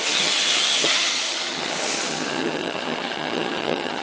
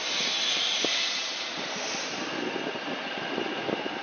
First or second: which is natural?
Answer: second